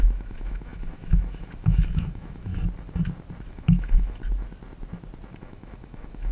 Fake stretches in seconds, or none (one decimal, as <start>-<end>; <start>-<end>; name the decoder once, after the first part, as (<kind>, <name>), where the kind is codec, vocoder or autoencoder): 0.0-2.5 (autoencoder, DAC-VAE); 3.5-4.2; 5.4-6.3